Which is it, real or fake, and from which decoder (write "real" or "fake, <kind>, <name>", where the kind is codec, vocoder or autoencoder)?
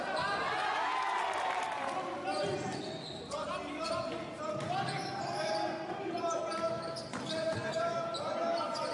real